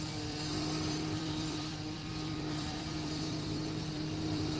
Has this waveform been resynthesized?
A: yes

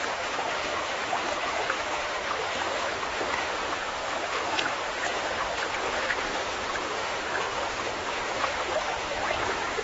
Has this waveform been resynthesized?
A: yes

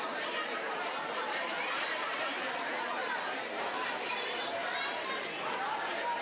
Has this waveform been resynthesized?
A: yes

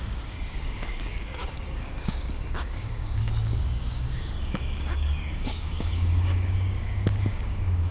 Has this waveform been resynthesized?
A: yes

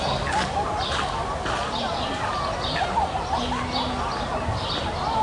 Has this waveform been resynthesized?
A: no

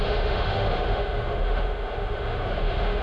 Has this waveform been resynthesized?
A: yes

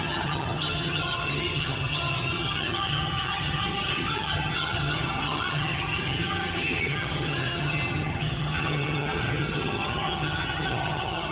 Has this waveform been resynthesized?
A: yes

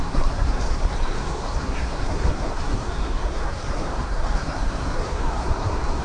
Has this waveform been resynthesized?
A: yes